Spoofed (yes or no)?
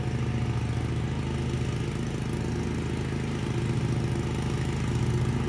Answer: no